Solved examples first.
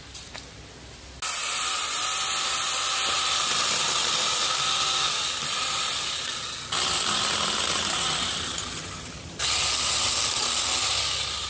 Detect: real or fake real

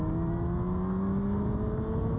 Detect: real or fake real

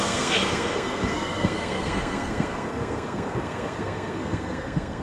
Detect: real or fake fake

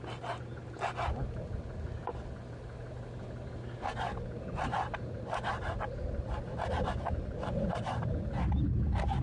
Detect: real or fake real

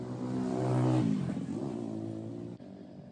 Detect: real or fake real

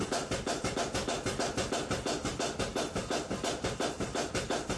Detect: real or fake real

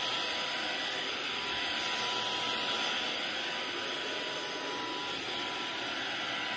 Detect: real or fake real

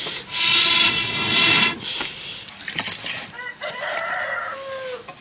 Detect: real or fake real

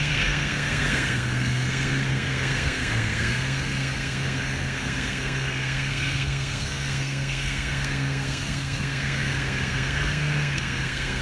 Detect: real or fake fake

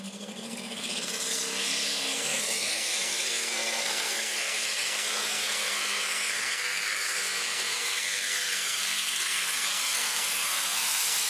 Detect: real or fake fake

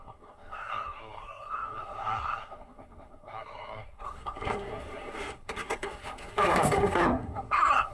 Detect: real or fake fake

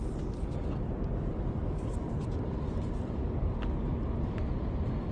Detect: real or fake real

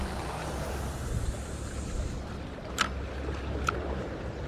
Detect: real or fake real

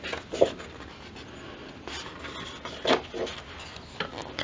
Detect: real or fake real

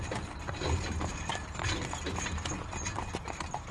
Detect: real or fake real